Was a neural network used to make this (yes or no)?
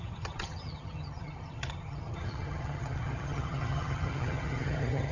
yes